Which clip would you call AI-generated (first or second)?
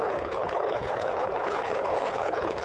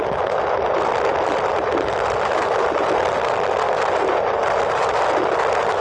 first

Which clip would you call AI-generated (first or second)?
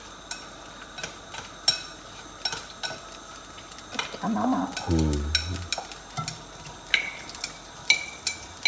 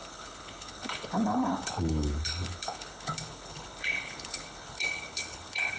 second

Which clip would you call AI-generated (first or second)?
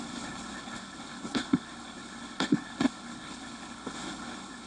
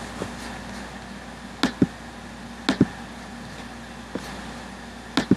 first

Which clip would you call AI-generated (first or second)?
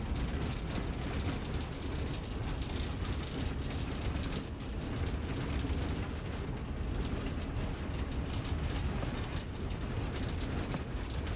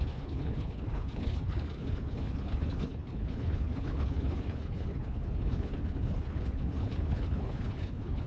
second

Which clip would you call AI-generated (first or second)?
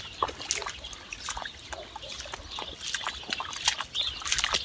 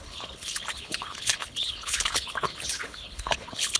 second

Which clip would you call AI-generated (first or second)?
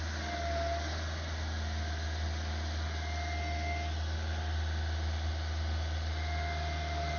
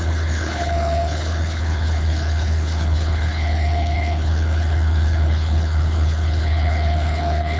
second